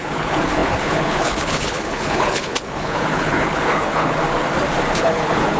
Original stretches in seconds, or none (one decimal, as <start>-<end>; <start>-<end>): 4.2-4.9